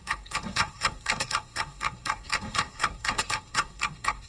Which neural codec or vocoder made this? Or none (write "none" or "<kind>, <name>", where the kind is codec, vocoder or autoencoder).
codec, SNAC